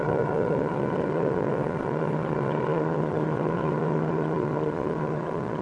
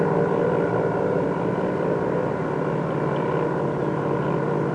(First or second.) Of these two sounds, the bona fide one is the second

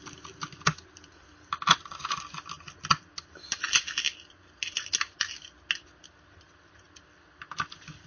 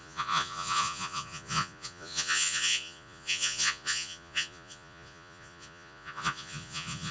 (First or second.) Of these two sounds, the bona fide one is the first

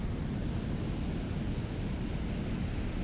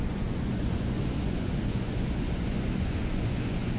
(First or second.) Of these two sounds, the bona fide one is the first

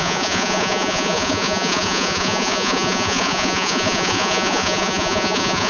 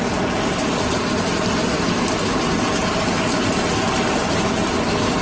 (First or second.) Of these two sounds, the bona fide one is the second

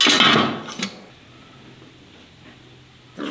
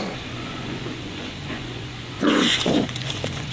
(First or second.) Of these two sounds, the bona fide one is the first